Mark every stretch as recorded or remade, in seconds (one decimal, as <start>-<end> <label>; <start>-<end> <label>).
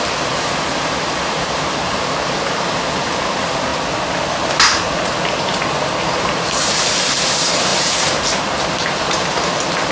0.0-3.7 remade; 3.7-6.0 recorded; 6.0-9.9 remade